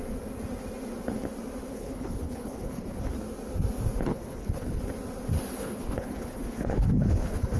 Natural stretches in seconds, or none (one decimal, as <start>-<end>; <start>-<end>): 0.0-1.7; 3.1-4.1; 4.8-5.6